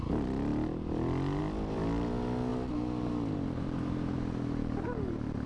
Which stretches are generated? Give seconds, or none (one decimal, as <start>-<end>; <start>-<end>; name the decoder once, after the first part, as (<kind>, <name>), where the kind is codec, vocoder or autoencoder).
4.6-5.1 (codec, DAC)